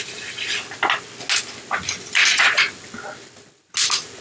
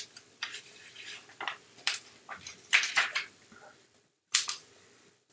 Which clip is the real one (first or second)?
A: first